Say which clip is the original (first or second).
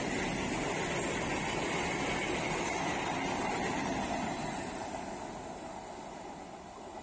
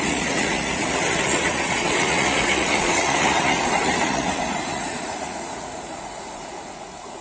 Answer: first